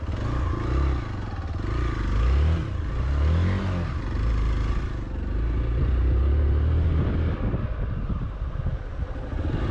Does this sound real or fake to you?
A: real